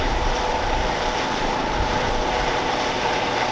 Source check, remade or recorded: remade